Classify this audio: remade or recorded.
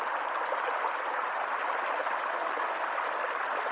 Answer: recorded